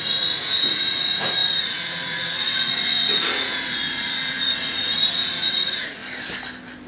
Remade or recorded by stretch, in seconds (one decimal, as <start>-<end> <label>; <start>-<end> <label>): 0.0-6.0 remade; 6.0-6.9 recorded